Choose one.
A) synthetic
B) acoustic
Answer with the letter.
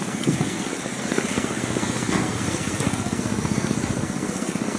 A